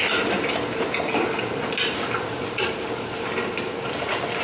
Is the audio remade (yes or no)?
no